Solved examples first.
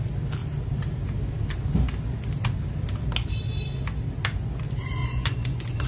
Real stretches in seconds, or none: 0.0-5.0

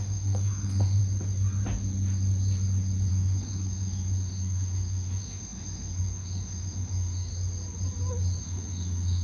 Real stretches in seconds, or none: 1.0-3.1; 7.3-8.4

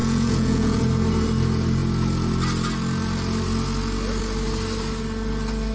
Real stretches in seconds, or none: 0.8-5.7

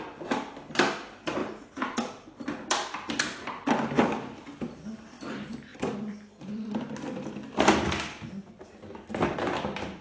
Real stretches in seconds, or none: 0.0-1.4; 2.0-10.0